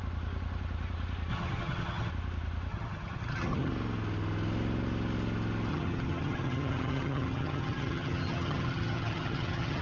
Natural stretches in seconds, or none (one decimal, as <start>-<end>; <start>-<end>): 0.0-1.3; 2.1-2.7; 3.7-5.7